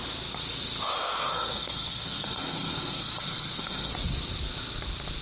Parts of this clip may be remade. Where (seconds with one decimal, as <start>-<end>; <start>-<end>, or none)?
1.0-3.9